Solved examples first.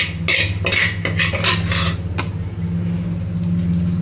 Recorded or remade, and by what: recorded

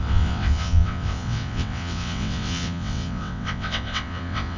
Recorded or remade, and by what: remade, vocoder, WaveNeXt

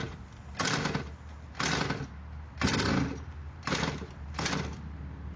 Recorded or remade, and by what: recorded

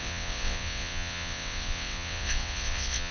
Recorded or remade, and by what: remade, vocoder, WaveNeXt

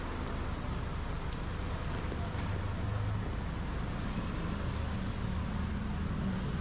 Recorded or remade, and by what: recorded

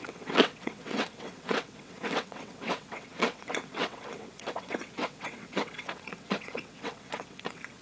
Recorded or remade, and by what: remade, vocoder, WaveNeXt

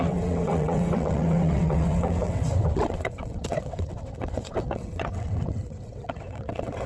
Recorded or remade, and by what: remade, vocoder, WaveNeXt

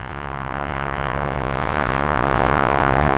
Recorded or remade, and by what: remade, vocoder, WaveNeXt